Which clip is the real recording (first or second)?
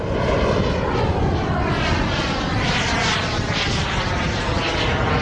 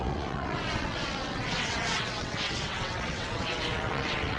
first